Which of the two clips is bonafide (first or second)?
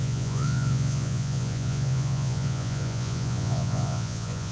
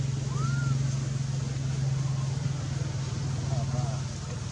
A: second